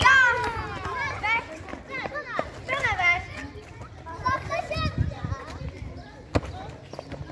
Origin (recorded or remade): recorded